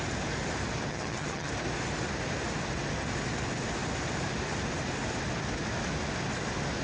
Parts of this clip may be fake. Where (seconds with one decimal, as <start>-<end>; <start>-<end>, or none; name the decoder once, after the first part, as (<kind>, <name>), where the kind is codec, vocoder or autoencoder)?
0.9-1.5 (vocoder, HiFi-GAN)